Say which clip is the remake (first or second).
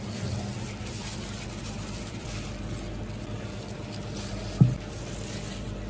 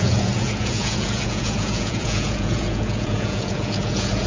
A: second